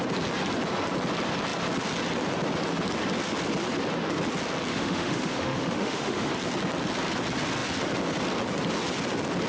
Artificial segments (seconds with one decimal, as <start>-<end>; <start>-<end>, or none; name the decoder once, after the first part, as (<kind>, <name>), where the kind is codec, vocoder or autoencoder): 4.7-6.3 (autoencoder, DAC-VAE)